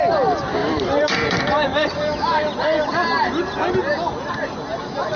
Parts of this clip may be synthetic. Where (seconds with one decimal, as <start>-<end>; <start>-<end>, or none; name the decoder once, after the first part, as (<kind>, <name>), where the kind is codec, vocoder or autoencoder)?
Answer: 0.6-1.4 (vocoder, BigVGAN v2)